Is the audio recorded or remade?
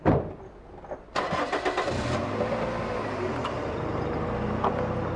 recorded